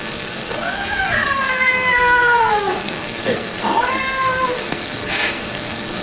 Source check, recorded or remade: remade